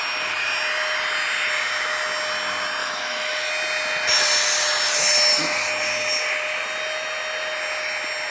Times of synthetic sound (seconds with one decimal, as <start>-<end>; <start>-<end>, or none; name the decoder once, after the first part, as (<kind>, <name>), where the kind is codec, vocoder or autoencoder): 2.8-3.5 (autoencoder, DAC-VAE)